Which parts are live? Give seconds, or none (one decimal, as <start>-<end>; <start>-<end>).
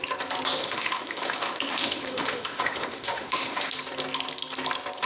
0.0-0.6; 3.7-5.1